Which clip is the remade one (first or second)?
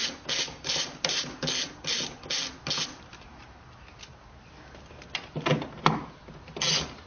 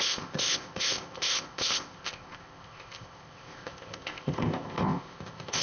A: second